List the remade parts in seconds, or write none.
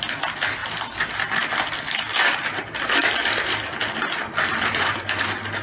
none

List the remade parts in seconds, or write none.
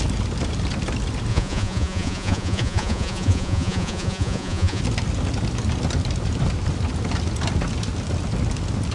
1.3-4.8 (vocoder, Vocos)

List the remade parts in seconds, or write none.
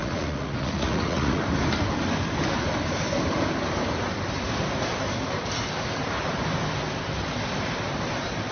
0.0-1.4 (vocoder, Vocos)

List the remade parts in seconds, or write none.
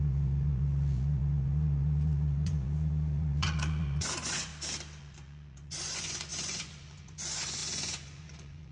0.0-4.5 (vocoder, Vocos); 5.0-8.7